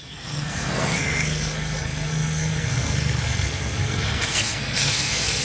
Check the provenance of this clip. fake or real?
fake